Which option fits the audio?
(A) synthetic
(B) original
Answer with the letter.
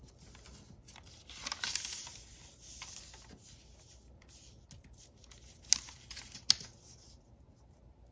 B